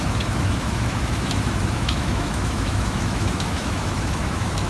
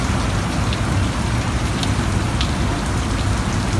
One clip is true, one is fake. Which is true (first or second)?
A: second